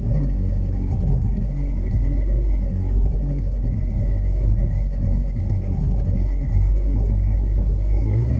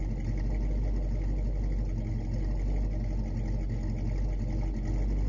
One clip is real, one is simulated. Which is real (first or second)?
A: second